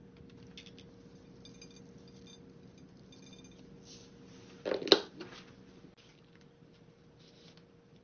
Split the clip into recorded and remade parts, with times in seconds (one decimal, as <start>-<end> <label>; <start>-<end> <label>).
0.0-8.0 recorded